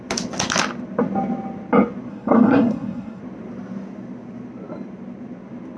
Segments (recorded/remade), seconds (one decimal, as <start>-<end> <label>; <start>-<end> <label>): 0.0-2.1 recorded; 2.1-3.2 remade; 3.2-5.8 recorded